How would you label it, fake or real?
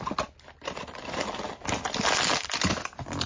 real